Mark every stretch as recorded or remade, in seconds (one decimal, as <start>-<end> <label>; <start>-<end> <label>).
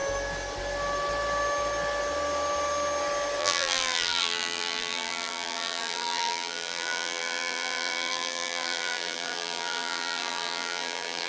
0.0-3.4 recorded; 3.4-11.3 remade